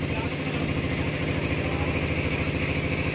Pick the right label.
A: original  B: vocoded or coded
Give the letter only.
A